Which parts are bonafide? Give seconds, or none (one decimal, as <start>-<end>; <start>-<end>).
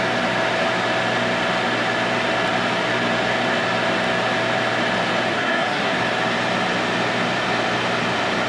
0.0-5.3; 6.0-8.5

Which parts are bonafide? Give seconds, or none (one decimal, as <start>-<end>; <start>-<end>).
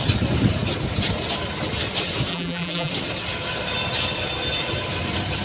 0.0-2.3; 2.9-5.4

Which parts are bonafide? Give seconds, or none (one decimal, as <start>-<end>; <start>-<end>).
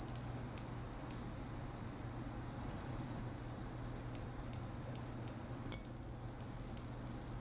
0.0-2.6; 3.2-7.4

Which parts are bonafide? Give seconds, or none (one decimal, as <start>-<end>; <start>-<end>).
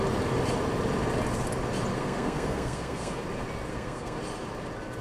0.0-1.9; 3.2-3.7; 4.2-5.0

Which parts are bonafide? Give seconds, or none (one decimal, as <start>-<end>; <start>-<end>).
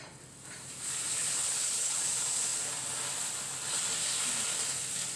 0.0-1.1; 2.0-5.2